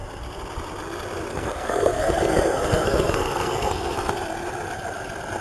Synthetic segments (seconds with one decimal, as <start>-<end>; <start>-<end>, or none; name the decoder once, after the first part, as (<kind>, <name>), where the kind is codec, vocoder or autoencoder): 1.3-4.1 (codec, SNAC)